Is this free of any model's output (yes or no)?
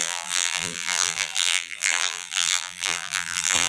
no